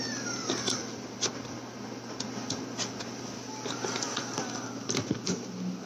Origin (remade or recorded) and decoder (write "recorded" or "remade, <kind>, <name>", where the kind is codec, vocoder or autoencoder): recorded